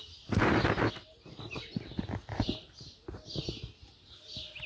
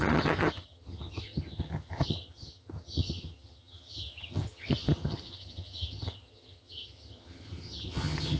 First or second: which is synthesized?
second